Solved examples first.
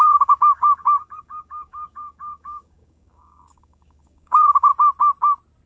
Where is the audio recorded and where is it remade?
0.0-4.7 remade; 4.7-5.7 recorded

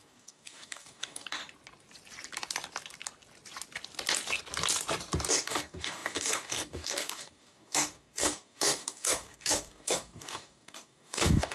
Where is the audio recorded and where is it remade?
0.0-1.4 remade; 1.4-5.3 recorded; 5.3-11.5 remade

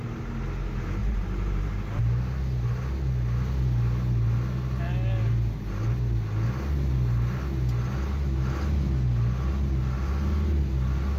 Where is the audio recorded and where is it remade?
0.0-1.0 recorded; 1.0-2.0 remade; 2.0-11.2 recorded

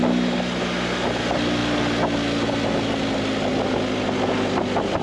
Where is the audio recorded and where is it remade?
0.0-5.0 recorded

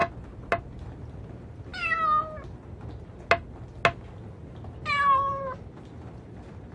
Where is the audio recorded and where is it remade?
0.0-0.6 recorded; 0.6-1.7 remade; 1.7-5.7 recorded; 5.7-6.7 remade